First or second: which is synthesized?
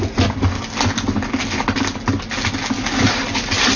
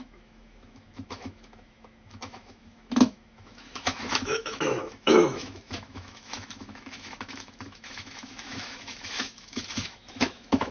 second